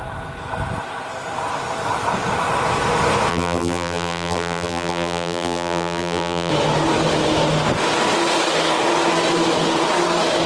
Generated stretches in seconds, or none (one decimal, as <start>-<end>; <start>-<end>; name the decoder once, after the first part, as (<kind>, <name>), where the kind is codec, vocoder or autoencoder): 3.3-6.5 (vocoder, BigVGAN v2)